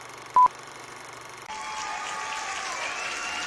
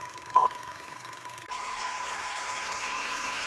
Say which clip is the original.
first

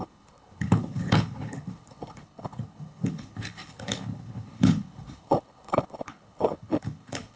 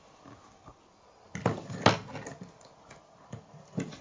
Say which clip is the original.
second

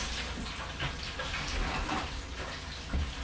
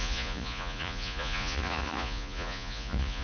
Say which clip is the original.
first